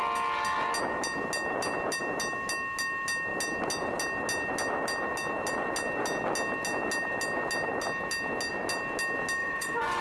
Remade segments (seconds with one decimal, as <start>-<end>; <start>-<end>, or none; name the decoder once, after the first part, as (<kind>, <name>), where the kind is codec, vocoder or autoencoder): 9.4-10.0 (vocoder, Vocos)